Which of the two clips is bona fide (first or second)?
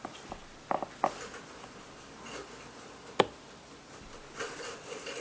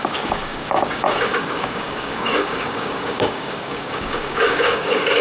first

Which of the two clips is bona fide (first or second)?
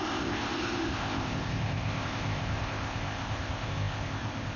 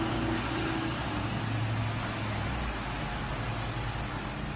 second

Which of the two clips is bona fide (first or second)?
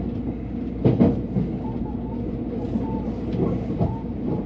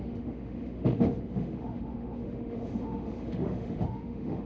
first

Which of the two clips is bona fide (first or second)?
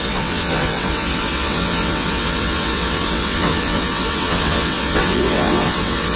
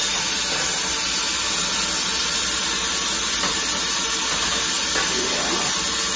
second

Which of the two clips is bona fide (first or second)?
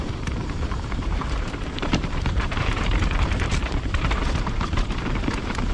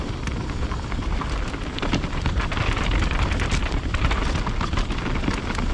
second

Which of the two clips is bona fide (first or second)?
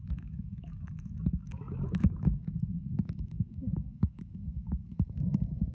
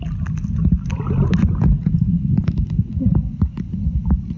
second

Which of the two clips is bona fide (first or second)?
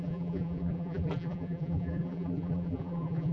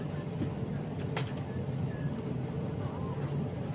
second